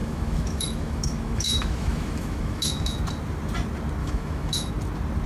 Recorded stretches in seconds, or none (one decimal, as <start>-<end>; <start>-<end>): 3.0-4.0; 4.7-5.3